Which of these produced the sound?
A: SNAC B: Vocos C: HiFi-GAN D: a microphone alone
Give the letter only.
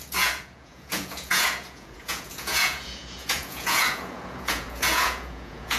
B